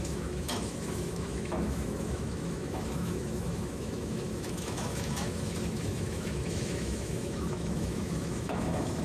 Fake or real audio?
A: fake